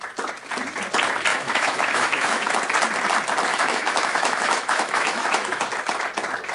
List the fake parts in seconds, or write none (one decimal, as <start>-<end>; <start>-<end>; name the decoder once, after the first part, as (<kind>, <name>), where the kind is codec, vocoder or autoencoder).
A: 1.3-2.5 (autoencoder, DAC-VAE); 3.5-5.6